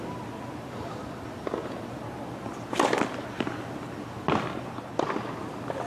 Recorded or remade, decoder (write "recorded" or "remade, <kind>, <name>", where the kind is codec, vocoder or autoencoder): recorded